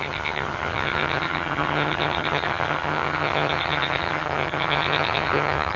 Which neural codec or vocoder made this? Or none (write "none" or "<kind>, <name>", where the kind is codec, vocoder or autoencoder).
vocoder, HiFi-GAN